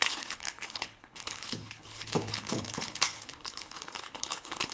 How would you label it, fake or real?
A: fake